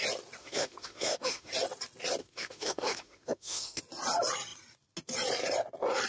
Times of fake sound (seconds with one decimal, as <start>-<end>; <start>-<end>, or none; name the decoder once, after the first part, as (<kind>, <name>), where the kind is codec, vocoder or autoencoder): 0.4-1.5 (autoencoder, DAC-VAE); 2.2-3.8